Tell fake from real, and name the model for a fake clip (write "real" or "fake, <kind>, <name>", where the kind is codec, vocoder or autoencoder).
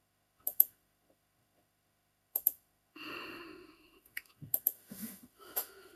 fake, autoencoder, DAC-VAE